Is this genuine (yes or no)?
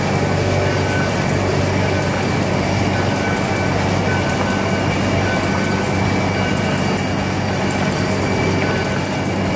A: yes